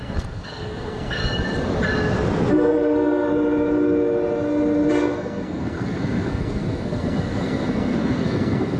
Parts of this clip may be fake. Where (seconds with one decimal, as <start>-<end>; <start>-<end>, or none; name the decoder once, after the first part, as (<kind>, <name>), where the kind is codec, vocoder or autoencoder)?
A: 0.0-1.2 (codec, SNAC); 2.5-3.3; 4.9-8.8